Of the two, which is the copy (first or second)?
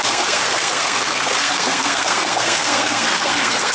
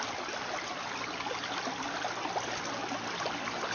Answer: first